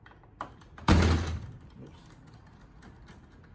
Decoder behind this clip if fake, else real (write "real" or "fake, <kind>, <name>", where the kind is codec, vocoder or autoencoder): real